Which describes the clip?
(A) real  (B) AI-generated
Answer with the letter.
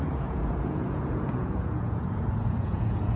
B